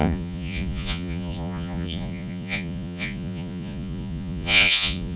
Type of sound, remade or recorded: remade